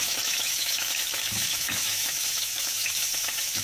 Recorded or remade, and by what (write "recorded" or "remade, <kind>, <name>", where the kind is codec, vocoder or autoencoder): remade, autoencoder, DAC-VAE